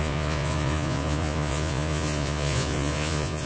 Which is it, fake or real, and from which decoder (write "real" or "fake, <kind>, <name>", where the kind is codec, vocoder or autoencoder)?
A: fake, vocoder, Vocos